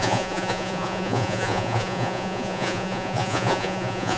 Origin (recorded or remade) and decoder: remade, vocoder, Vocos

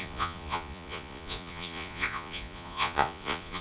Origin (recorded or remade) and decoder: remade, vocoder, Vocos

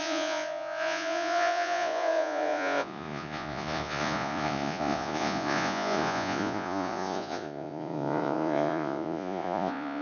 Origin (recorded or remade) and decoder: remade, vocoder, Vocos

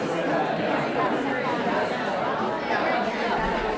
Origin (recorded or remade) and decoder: recorded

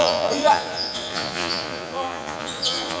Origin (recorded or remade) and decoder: remade, vocoder, Vocos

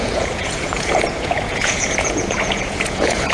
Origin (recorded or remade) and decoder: remade, vocoder, Vocos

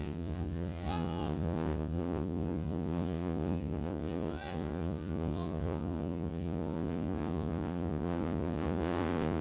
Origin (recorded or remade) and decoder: remade, vocoder, Vocos